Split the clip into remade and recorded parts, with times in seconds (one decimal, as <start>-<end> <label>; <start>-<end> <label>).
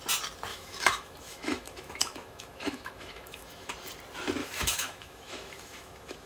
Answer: 0.0-0.5 recorded; 0.5-3.7 remade; 3.7-4.4 recorded; 4.4-6.3 remade